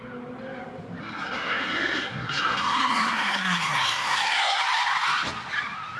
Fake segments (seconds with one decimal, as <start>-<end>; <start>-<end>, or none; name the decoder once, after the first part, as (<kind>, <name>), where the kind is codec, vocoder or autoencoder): 1.0-4.6 (codec, SNAC)